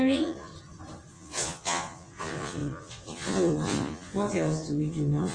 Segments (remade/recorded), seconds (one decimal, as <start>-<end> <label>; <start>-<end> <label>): 0.0-0.5 remade; 0.5-1.1 recorded; 1.1-5.3 remade